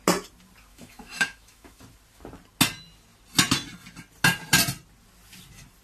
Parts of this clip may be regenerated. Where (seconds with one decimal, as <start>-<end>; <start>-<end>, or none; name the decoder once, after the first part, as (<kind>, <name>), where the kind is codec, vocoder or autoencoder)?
0.7-1.8 (autoencoder, DAC-VAE)